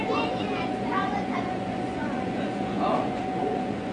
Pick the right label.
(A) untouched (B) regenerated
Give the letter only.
B